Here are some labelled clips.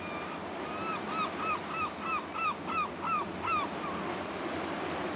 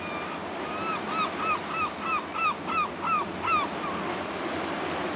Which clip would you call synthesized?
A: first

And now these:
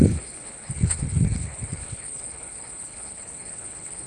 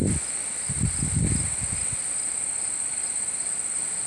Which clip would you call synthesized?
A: first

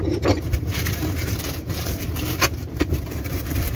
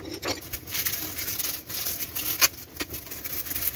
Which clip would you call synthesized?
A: first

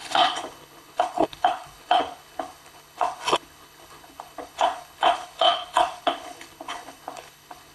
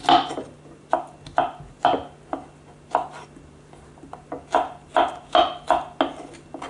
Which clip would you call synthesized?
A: first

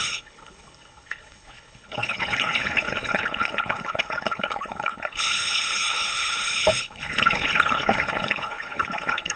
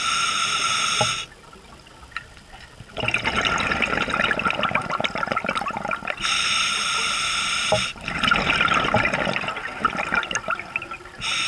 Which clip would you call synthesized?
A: first